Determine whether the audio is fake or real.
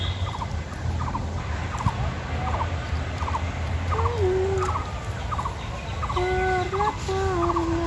real